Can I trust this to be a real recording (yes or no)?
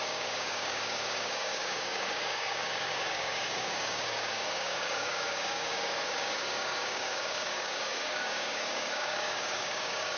no